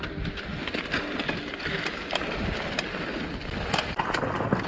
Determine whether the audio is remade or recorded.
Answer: recorded